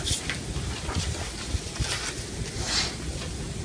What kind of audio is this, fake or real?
real